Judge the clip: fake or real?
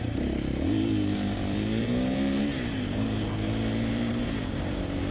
fake